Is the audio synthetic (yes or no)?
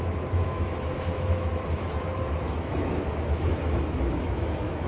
yes